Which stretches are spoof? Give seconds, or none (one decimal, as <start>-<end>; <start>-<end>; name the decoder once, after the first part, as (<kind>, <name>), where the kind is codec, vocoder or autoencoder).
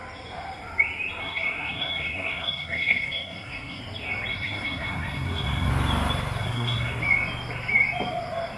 1.2-3.8 (codec, SNAC); 4.3-5.7; 6.4-7.0